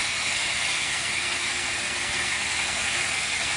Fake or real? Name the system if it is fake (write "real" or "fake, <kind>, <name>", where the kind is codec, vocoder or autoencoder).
fake, codec, SNAC